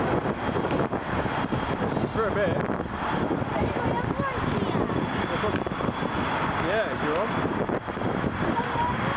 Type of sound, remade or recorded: recorded